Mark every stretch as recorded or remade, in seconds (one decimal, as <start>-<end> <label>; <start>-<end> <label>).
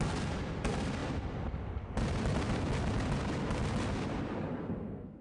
0.0-4.6 recorded; 4.6-5.2 remade